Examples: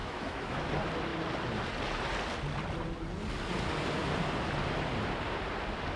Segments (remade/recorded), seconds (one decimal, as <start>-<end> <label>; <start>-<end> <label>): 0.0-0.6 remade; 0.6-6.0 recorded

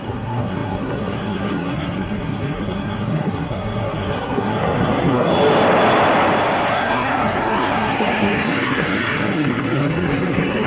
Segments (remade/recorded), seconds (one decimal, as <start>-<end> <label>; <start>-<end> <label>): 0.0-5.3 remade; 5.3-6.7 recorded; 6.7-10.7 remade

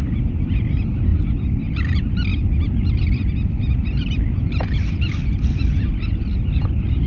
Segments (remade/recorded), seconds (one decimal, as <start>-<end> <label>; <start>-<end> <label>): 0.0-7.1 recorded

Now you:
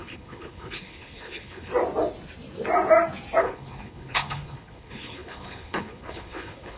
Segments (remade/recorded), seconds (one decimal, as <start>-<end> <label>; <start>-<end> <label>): 0.0-1.7 remade; 1.7-3.4 recorded; 3.4-6.8 remade

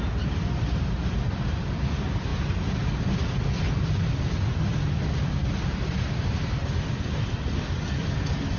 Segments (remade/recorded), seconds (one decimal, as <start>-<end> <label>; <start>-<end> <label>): 0.0-8.6 recorded